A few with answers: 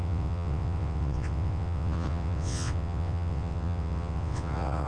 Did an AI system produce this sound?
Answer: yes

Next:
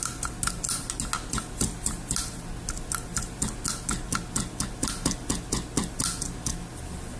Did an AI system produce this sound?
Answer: no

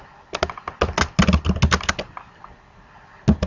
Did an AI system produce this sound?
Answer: no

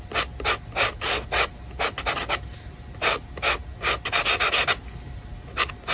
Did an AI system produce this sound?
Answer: no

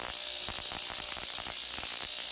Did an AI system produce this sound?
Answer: no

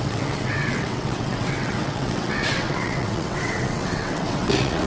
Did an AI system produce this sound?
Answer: yes